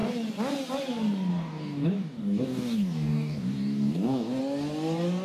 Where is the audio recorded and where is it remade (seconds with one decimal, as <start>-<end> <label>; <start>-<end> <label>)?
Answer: 0.0-1.3 recorded; 1.3-4.4 remade; 4.4-5.2 recorded